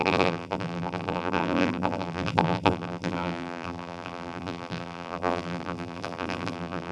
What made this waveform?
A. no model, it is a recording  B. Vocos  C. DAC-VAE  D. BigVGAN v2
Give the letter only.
D